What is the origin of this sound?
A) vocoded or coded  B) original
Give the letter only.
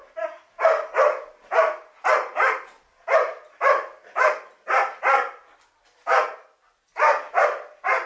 B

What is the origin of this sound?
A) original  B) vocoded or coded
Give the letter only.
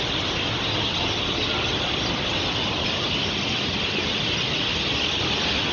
A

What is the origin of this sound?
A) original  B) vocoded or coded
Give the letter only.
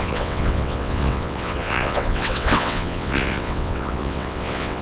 B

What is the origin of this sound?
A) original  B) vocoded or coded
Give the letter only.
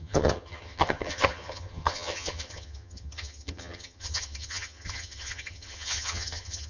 B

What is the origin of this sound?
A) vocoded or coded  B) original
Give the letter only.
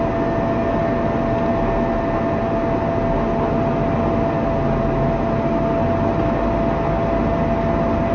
B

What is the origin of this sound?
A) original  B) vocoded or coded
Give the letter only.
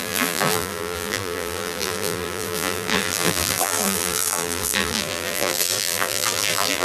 B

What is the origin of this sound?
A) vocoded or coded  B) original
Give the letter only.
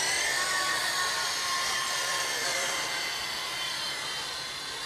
B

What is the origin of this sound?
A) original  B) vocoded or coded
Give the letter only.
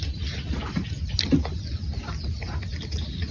A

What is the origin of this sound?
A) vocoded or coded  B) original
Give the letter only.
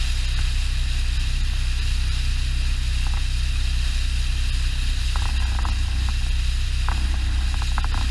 B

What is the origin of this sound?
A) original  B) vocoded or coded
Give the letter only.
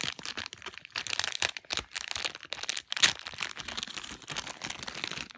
A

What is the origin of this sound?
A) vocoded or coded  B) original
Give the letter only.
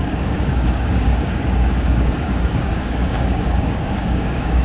A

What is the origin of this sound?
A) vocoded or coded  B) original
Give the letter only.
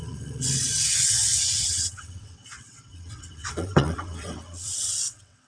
A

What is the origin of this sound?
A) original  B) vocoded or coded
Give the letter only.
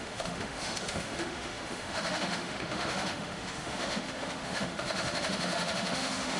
B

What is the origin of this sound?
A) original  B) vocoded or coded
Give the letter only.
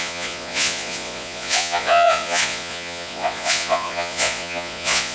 B